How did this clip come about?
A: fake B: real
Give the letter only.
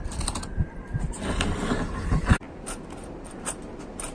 B